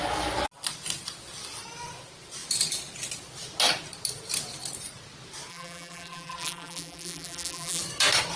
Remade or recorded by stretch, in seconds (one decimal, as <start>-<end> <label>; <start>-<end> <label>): 0.0-5.5 recorded; 5.5-7.8 remade; 7.8-8.4 recorded